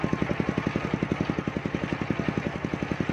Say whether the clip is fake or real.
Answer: real